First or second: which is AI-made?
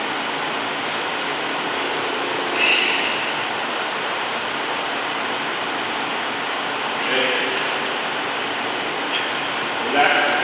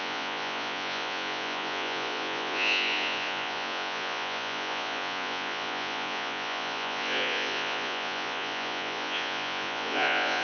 second